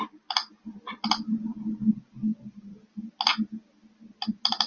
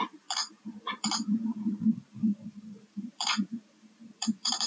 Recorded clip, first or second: first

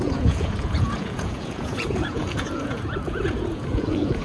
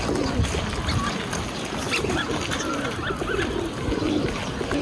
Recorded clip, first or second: second